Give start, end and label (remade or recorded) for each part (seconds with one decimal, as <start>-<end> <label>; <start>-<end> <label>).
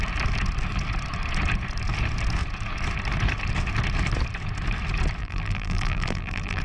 0.0-5.2 recorded; 5.2-6.6 remade